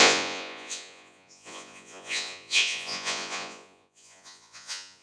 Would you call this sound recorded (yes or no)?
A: no